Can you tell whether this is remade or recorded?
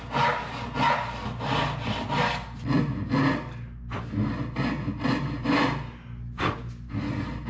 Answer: recorded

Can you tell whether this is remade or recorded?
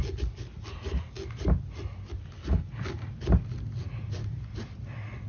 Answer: recorded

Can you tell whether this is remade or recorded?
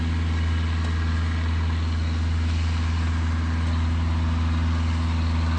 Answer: recorded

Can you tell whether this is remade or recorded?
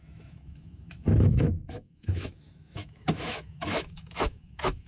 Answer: remade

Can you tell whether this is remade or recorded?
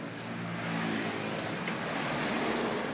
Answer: recorded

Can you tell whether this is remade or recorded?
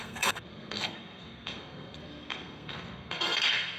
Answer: remade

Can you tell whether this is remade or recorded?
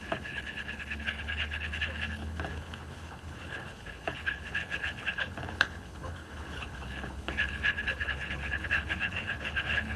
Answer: remade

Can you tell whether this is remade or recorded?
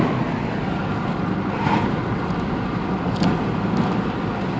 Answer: recorded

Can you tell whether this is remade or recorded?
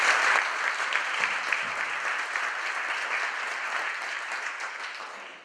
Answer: recorded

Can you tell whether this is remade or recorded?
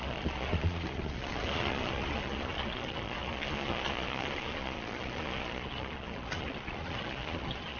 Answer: remade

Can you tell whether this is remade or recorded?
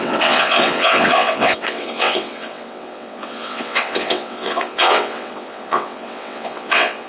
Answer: remade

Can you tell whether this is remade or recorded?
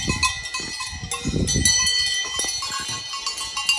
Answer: recorded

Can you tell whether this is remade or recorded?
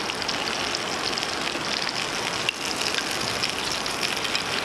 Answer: recorded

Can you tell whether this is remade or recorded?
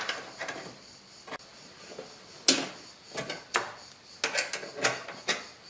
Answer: recorded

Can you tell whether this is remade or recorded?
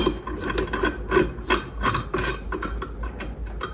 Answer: recorded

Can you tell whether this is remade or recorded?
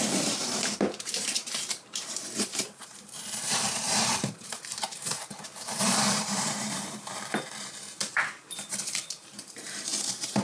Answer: remade